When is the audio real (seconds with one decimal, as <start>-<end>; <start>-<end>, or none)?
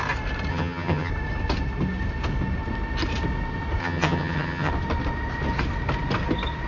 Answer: 0.0-0.5; 1.1-3.8; 4.7-6.7